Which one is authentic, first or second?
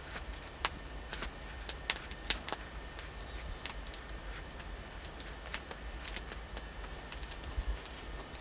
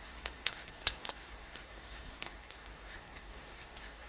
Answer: first